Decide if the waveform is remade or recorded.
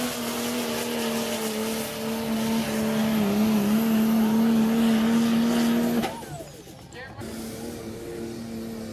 recorded